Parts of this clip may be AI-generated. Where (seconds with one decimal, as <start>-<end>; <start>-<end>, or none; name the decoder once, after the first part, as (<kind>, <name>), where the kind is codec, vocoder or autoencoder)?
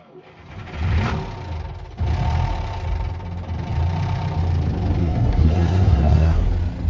5.0-6.5 (codec, SNAC)